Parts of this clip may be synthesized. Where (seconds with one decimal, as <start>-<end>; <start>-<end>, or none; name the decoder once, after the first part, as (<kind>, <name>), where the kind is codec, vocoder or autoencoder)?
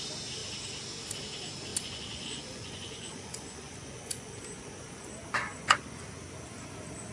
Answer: 1.7-5.1 (vocoder, Vocos); 5.5-6.1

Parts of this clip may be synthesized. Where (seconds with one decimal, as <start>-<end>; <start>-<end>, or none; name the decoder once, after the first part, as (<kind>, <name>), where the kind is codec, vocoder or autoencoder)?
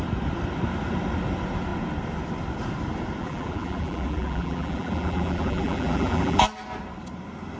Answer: 3.2-6.4 (vocoder, BigVGAN v2)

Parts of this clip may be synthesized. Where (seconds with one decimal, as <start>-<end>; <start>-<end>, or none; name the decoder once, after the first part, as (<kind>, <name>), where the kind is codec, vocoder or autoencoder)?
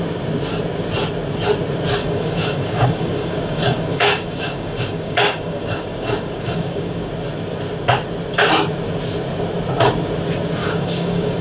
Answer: 2.0-7.1 (codec, DAC); 10.6-11.4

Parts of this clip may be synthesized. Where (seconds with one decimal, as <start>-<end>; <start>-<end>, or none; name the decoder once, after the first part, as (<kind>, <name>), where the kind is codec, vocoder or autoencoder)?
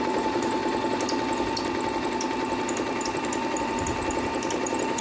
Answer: 0.0-0.6 (vocoder, BigVGAN v2); 3.6-5.0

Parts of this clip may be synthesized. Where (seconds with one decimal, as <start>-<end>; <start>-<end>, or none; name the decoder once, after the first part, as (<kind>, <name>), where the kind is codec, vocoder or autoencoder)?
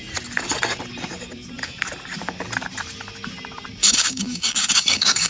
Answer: 3.8-5.3 (codec, DAC)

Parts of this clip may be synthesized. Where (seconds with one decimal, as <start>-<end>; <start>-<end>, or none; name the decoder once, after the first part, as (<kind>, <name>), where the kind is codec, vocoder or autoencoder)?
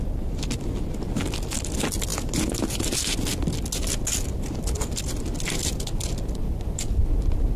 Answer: none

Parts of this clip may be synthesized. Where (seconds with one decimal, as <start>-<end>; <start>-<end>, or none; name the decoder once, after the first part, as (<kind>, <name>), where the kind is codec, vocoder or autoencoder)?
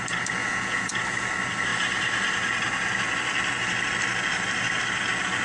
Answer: 0.4-0.9 (vocoder, Vocos)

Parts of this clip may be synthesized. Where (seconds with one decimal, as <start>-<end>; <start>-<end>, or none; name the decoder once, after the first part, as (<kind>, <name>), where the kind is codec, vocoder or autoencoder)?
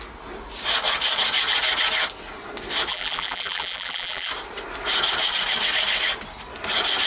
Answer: 2.9-4.3 (vocoder, BigVGAN v2)